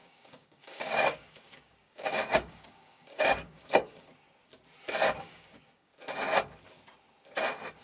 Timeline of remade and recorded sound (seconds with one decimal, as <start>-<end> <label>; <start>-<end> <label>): 0.0-4.1 remade; 4.1-5.2 recorded; 5.2-5.9 remade; 5.9-7.8 recorded